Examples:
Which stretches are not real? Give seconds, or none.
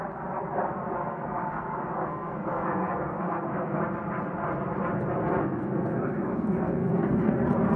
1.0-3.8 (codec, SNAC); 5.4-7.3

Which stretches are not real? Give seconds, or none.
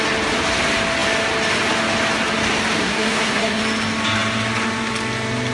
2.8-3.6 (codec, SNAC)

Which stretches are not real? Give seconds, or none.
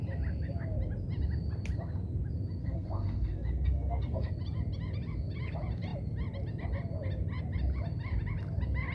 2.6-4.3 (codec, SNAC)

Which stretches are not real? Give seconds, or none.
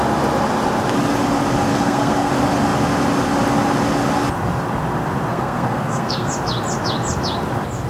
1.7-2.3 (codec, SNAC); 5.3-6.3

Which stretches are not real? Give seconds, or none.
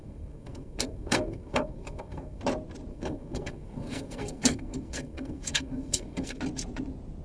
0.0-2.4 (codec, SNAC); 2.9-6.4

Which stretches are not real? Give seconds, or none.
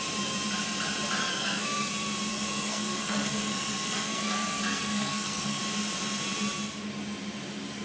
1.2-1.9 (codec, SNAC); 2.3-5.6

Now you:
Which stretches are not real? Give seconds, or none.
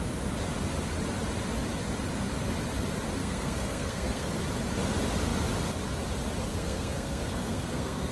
3.2-4.3 (codec, SNAC); 6.5-8.1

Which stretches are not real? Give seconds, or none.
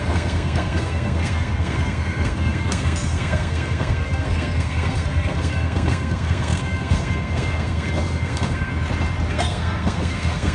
0.0-8.7 (codec, SNAC); 9.3-10.5